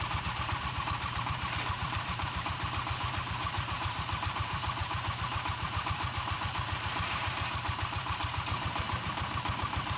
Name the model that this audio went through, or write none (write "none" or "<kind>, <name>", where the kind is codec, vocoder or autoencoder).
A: vocoder, BigVGAN v2